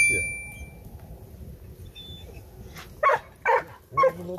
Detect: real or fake real